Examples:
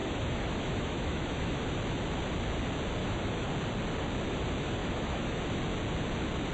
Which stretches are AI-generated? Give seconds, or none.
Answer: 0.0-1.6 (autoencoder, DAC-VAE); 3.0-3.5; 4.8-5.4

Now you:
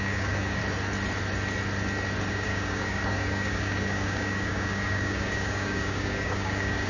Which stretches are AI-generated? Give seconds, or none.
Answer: 0.0-0.6 (codec, DAC); 2.3-6.9

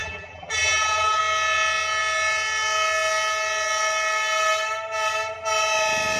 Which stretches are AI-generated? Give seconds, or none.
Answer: 0.0-1.2 (vocoder, BigVGAN v2)

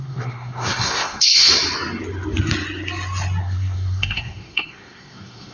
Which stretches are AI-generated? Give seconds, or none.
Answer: 0.0-1.5 (codec, SNAC); 3.4-5.5

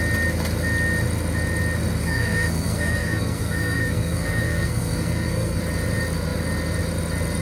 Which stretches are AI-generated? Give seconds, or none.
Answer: 2.0-5.6 (codec, SNAC)

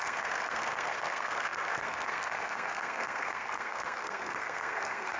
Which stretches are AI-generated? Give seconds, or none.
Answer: 0.0-5.2 (codec, SNAC)

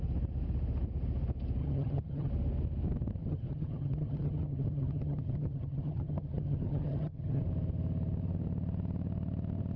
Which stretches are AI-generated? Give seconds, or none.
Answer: 1.6-2.3 (vocoder, HiFi-GAN); 3.2-7.4

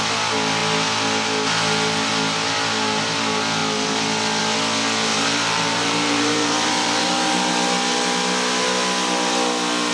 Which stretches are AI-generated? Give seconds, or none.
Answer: 5.1-7.5 (vocoder, BigVGAN v2)